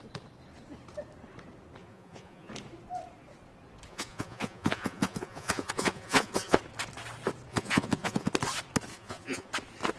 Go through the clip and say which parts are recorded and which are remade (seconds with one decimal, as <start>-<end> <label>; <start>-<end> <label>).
0.0-1.8 recorded; 1.8-2.5 remade; 2.5-3.9 recorded; 3.9-6.6 remade; 6.6-7.5 recorded; 7.5-8.3 remade; 8.3-8.9 recorded; 8.9-9.5 remade; 9.5-10.0 recorded

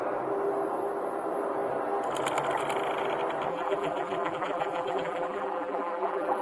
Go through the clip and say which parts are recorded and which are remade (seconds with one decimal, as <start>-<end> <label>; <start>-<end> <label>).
0.0-3.5 recorded; 3.5-6.4 remade